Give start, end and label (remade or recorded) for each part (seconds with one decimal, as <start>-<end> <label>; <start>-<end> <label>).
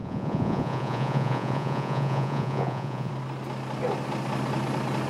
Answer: 0.0-3.1 remade; 3.1-5.1 recorded